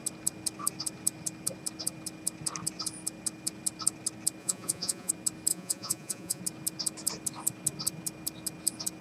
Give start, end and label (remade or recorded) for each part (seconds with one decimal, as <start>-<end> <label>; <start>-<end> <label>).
0.0-4.4 recorded; 4.4-5.1 remade; 5.1-5.5 recorded; 5.5-6.4 remade; 6.4-9.0 recorded